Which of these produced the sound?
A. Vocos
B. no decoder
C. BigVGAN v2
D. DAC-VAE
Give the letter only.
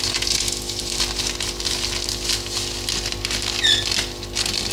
B